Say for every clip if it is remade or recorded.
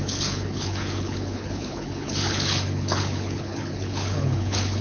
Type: remade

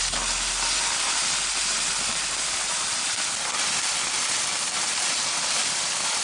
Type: recorded